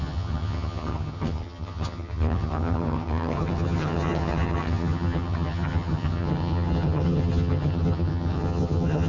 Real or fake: fake